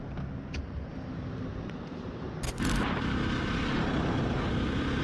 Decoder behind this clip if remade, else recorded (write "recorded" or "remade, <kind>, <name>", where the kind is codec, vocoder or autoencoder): recorded